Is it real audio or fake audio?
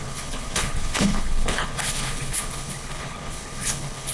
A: fake